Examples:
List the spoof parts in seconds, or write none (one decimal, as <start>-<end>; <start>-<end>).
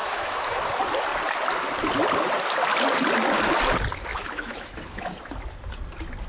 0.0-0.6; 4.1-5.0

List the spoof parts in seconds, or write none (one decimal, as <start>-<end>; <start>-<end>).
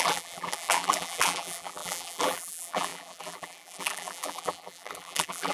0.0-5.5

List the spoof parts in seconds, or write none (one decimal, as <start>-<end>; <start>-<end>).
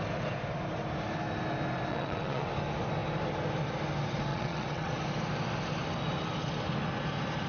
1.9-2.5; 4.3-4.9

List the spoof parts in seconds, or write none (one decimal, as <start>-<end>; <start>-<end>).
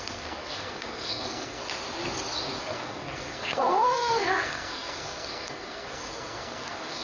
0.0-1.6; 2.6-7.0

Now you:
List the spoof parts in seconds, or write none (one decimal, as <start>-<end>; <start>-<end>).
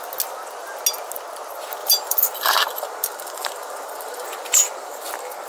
1.8-5.1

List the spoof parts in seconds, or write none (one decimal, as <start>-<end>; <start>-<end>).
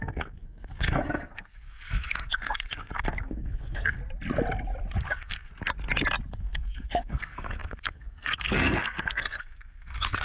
0.0-4.0; 5.1-5.5; 6.3-10.2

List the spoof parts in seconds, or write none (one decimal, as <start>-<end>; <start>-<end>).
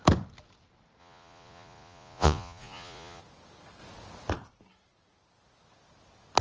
1.0-3.2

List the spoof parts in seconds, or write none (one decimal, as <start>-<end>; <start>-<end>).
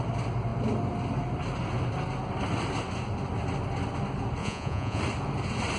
4.4-5.0